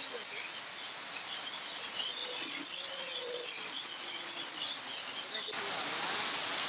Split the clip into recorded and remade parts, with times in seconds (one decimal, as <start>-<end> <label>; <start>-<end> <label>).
0.0-2.2 recorded; 2.2-4.6 remade; 4.6-6.7 recorded